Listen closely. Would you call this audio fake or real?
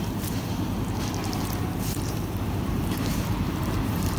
fake